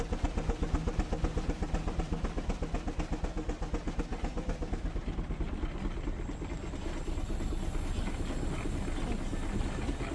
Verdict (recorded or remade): recorded